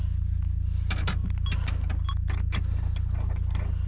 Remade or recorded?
recorded